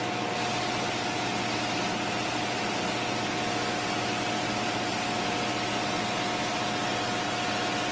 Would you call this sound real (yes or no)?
yes